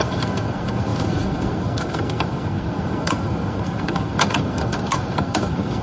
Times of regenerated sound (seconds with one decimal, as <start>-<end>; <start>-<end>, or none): 0.0-5.8